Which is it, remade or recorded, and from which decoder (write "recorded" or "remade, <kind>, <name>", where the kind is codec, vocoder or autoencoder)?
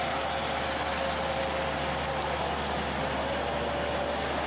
recorded